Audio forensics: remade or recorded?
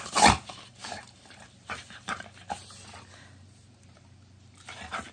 recorded